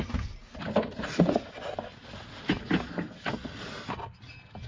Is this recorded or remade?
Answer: recorded